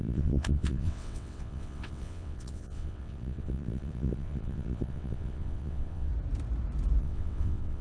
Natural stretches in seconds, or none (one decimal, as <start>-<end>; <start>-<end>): 6.1-7.0